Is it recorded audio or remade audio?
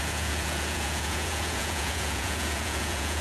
remade